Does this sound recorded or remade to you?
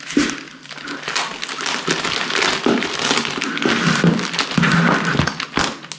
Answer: recorded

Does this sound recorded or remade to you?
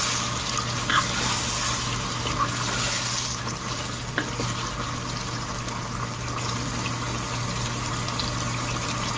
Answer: recorded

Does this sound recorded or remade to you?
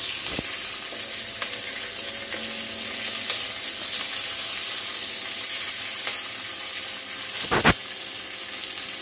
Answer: recorded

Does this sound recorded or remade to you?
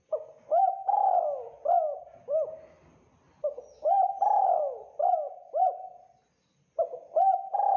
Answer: recorded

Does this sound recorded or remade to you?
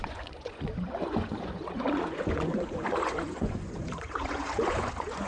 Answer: remade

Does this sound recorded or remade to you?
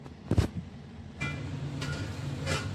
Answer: recorded